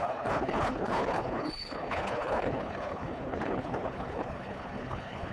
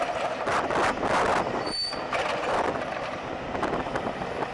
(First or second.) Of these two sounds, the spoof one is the first